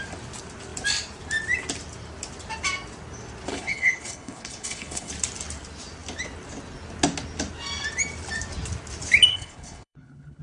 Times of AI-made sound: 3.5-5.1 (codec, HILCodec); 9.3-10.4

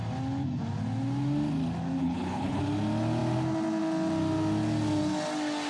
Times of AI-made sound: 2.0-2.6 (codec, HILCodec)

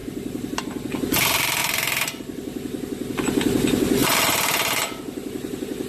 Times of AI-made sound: 0.0-0.6 (vocoder, BigVGAN v2); 1.6-2.2; 4.0-5.0